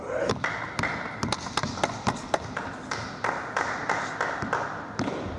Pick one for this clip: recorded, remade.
recorded